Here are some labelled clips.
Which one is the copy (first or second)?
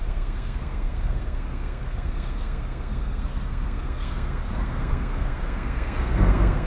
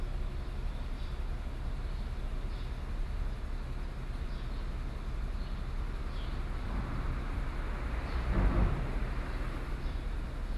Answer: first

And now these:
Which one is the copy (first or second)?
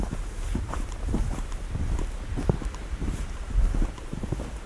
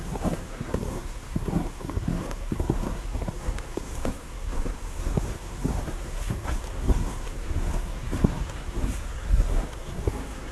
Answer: second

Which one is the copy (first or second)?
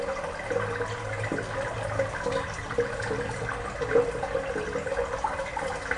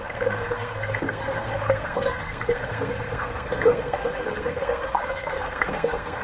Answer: second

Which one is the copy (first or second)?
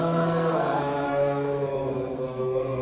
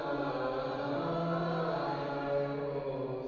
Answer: first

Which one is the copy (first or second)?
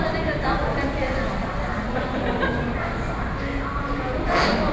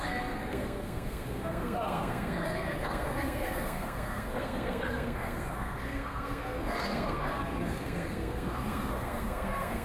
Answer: second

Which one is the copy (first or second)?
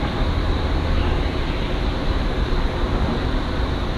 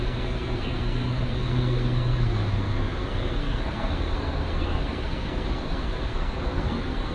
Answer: second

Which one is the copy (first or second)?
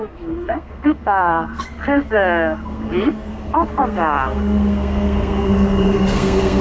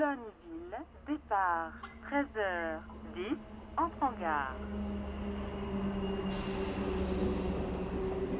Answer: first